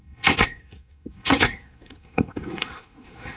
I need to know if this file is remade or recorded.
remade